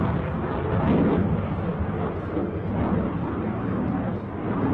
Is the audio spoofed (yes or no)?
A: no